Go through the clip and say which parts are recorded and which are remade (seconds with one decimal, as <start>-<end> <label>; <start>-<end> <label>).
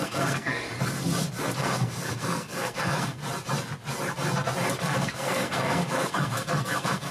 0.0-0.6 remade; 0.6-1.6 recorded; 1.6-3.2 remade; 3.2-4.8 recorded; 4.8-7.1 remade